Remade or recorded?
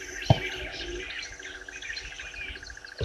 recorded